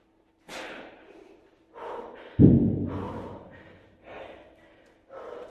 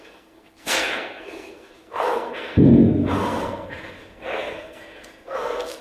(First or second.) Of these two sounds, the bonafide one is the first